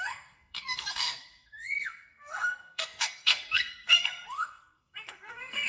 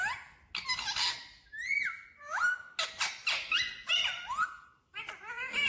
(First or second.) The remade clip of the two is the first